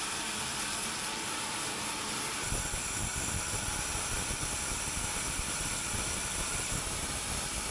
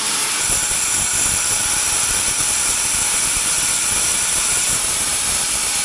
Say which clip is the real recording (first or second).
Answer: second